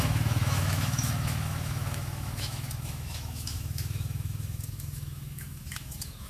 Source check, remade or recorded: remade